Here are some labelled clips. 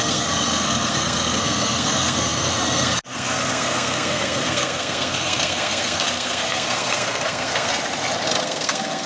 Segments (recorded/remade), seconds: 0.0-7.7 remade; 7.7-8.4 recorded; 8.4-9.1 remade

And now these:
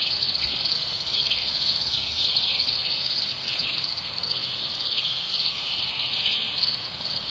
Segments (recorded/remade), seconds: 0.0-7.3 remade

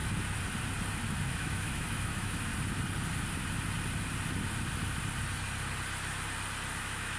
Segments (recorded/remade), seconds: 0.0-1.3 recorded; 1.3-2.5 remade; 2.5-6.8 recorded; 6.8-7.2 remade

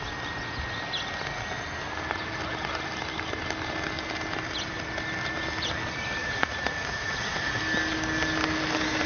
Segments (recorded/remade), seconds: 0.0-6.2 recorded; 6.2-7.6 remade; 7.6-9.1 recorded

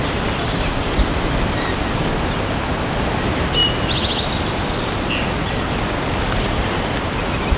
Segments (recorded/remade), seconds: 0.0-7.6 recorded

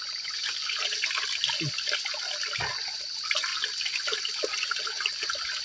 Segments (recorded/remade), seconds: 0.0-5.6 recorded